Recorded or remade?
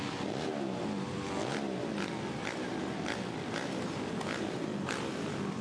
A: recorded